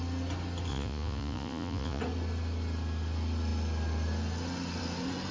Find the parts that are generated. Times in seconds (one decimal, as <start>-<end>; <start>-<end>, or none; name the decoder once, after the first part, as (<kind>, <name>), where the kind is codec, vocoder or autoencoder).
0.7-2.0 (vocoder, Vocos)